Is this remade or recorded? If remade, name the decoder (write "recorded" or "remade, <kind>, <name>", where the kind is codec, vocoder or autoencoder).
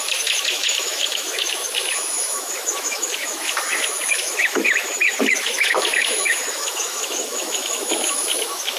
remade, autoencoder, DAC-VAE